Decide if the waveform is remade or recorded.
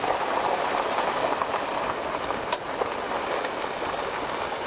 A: recorded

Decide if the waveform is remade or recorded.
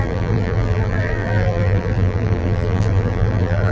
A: remade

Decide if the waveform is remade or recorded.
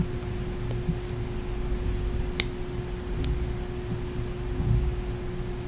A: recorded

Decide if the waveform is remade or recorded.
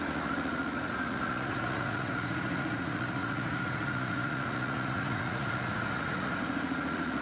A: remade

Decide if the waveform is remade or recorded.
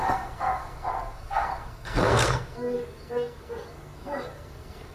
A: remade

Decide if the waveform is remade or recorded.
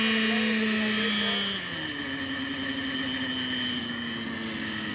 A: recorded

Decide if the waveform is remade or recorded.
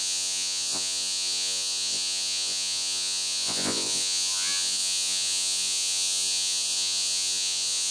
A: remade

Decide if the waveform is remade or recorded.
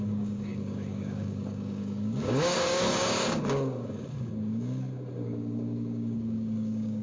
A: remade